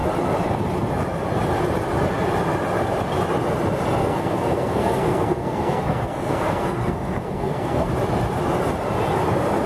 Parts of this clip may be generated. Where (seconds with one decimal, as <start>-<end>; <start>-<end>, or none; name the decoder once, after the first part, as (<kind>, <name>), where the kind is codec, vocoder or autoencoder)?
4.0-7.9 (codec, SNAC)